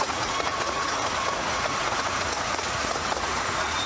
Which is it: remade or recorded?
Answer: remade